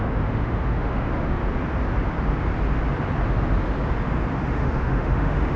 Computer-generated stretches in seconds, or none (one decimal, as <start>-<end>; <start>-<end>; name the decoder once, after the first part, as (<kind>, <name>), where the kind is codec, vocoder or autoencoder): 0.0-1.4 (autoencoder, DAC-VAE); 4.5-5.6

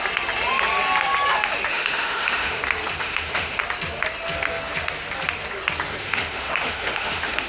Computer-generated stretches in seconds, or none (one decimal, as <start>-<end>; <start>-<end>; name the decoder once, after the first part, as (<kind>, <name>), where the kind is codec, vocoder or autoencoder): 1.7-2.6 (autoencoder, DAC-VAE); 3.0-3.6; 6.0-7.5

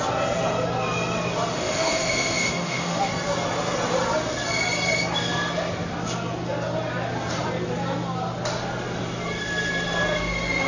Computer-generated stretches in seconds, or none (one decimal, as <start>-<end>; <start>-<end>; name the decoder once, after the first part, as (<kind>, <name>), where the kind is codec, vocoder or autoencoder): 1.5-3.1 (autoencoder, DAC-VAE)

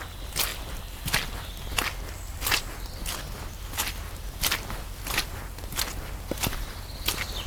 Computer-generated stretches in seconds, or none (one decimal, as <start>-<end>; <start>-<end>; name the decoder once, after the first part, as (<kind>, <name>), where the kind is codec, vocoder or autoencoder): none

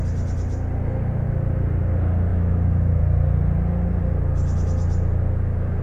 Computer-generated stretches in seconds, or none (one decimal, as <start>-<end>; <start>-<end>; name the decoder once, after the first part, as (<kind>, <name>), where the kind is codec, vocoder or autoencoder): 2.3-3.0 (autoencoder, DAC-VAE)

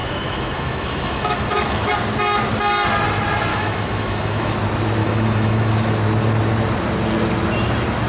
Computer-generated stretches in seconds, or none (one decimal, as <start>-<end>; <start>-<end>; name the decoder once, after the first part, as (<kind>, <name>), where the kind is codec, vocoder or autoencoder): 0.0-1.9 (autoencoder, DAC-VAE); 3.5-4.5; 5.0-5.7